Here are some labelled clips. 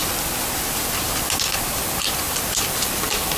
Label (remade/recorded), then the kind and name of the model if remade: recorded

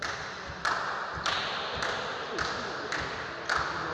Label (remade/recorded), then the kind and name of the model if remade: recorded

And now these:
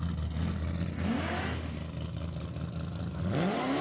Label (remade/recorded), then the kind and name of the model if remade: recorded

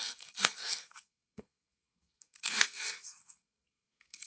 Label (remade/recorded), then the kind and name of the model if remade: remade, codec, SNAC